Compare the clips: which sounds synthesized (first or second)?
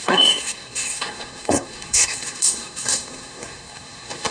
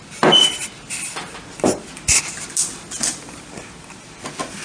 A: first